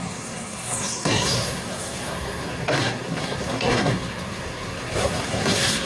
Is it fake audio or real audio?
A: fake